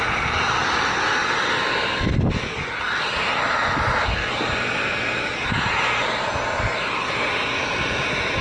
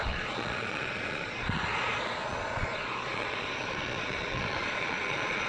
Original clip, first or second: first